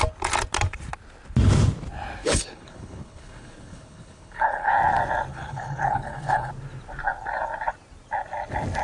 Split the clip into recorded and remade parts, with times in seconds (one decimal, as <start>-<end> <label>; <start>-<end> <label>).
0.0-2.2 recorded; 2.2-4.7 remade; 4.7-5.3 recorded; 5.3-6.5 remade; 6.5-8.8 recorded

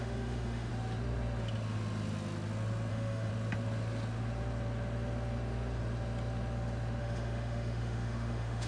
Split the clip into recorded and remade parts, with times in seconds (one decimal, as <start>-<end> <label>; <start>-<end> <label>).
0.0-0.7 remade; 0.7-2.9 recorded; 2.9-3.3 remade; 3.3-7.0 recorded; 7.0-8.7 remade